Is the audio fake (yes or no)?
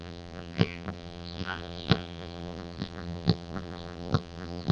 yes